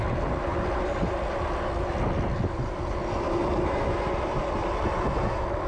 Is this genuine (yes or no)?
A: yes